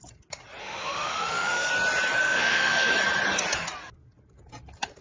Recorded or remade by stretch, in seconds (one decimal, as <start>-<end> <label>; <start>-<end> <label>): 0.0-0.6 recorded; 0.6-1.7 remade; 1.7-2.2 recorded; 2.2-2.9 remade; 2.9-5.0 recorded